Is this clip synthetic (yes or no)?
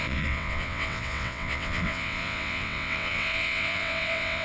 yes